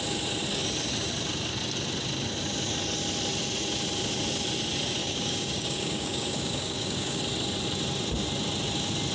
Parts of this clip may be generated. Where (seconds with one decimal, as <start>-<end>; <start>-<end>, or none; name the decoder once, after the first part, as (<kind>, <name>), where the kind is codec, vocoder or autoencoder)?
5.0-7.2 (codec, DAC)